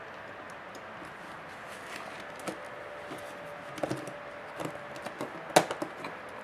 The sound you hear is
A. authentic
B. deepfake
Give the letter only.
A